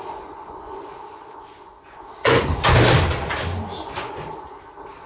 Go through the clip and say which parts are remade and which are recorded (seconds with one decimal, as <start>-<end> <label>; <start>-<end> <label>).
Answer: 0.0-2.4 remade; 2.4-3.8 recorded; 3.8-4.6 remade; 4.6-5.1 recorded